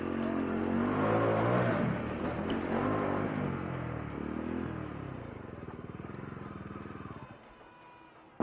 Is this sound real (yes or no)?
yes